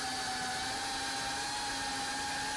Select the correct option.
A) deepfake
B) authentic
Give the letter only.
B